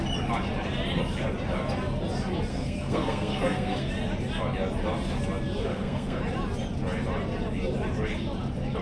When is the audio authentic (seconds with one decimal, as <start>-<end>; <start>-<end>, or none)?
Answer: 0.0-2.5; 3.9-5.7; 6.2-8.8